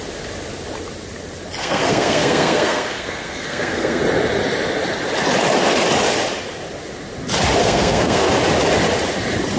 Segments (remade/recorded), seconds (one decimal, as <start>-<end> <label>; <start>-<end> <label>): 0.0-1.6 recorded; 1.6-4.0 remade; 4.0-7.6 recorded; 7.6-8.3 remade; 8.3-9.6 recorded